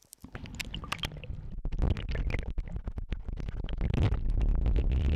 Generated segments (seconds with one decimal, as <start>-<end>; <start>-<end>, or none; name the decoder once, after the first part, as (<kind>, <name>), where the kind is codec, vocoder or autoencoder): none